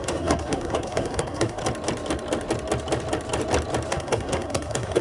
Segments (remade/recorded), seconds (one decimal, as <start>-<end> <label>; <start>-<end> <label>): 0.0-1.6 remade; 1.6-3.9 recorded; 3.9-5.0 remade